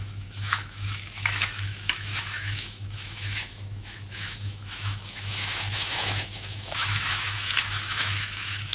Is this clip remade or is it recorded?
remade